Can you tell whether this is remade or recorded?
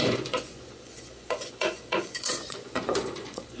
remade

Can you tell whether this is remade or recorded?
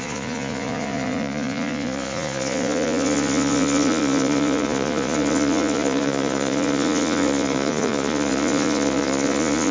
remade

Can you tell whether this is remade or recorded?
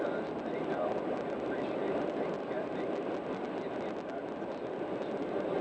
recorded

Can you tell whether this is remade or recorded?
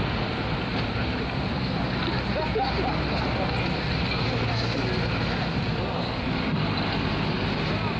recorded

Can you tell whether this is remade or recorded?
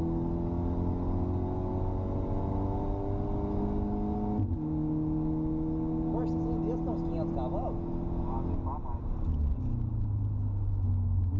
recorded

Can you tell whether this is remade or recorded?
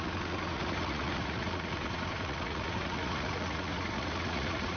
remade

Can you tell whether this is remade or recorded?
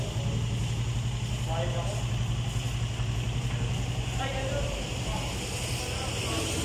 recorded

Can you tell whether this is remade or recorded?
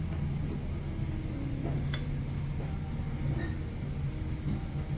recorded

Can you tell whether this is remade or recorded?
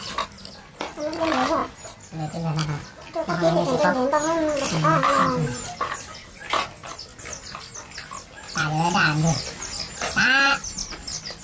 recorded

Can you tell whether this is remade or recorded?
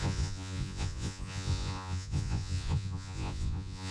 remade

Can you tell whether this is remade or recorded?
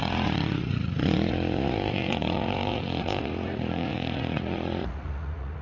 remade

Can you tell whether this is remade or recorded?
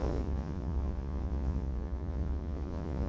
remade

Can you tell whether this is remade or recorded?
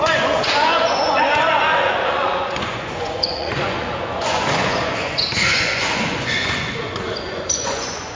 remade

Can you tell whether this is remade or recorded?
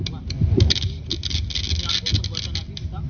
recorded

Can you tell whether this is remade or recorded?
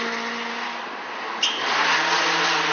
recorded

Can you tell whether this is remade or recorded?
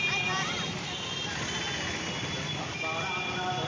recorded